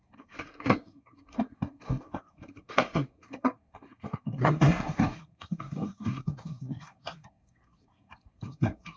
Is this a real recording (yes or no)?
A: no